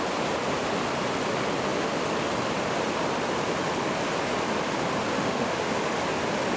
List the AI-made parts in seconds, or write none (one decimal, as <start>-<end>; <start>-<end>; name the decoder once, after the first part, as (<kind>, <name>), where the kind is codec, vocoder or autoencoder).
5.1-5.8 (autoencoder, DAC-VAE)